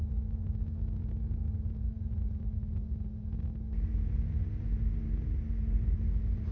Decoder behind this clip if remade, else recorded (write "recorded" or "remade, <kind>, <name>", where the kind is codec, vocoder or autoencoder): recorded